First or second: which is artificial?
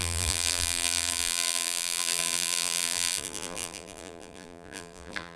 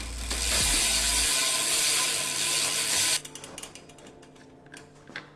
first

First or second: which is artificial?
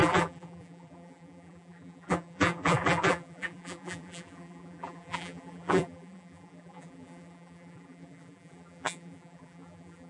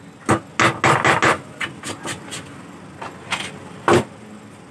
first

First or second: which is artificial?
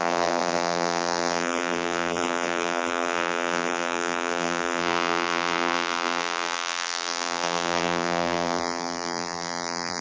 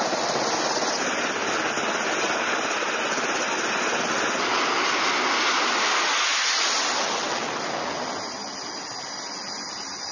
first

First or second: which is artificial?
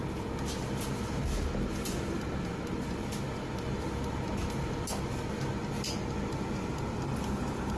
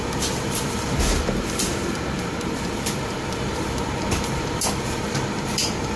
second